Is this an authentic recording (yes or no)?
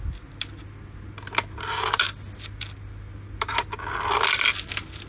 yes